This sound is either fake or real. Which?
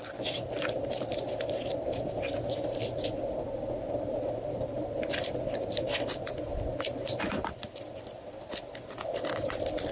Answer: fake